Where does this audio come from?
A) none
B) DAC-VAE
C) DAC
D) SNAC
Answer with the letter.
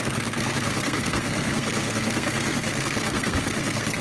D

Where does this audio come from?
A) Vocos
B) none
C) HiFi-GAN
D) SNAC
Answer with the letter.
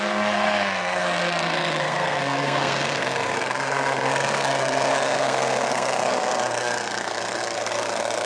D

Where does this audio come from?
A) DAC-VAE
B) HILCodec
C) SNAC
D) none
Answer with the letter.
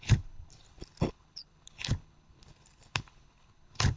B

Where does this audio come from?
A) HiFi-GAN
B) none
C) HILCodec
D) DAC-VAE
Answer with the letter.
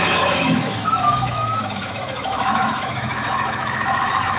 D